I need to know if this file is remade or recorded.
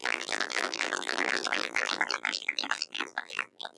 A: remade